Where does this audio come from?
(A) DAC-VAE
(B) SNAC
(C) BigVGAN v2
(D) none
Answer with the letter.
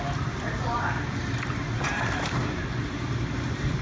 C